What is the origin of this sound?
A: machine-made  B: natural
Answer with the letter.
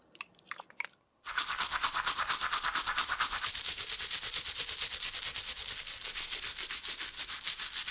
A